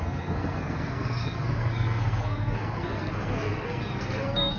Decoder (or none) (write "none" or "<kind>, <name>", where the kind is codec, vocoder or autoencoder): codec, SNAC